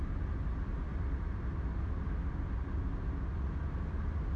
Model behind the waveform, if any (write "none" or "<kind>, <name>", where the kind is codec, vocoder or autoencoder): none